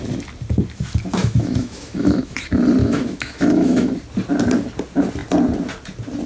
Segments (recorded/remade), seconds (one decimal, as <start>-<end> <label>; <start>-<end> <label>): 0.0-1.2 recorded; 1.2-2.4 remade; 2.4-2.8 recorded; 2.8-3.9 remade; 3.9-6.3 recorded